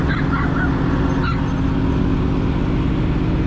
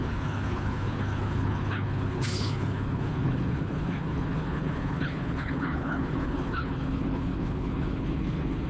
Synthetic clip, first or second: second